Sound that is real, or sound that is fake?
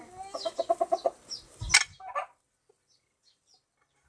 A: real